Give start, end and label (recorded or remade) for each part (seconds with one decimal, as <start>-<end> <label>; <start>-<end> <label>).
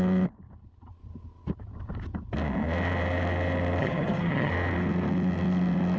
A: 0.0-3.8 recorded; 3.8-4.5 remade; 4.5-6.0 recorded